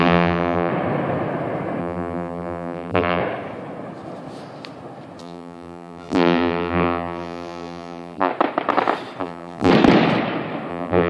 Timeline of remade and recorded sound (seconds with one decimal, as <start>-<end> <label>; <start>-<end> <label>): 0.0-0.7 remade; 0.7-1.8 recorded; 1.8-3.2 remade; 3.2-5.2 recorded; 5.2-8.3 remade; 8.3-9.2 recorded; 9.2-9.7 remade; 9.7-10.7 recorded; 10.7-11.1 remade